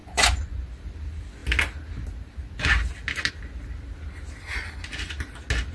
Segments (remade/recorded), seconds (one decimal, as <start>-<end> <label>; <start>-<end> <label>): 0.0-0.7 remade; 0.7-5.7 recorded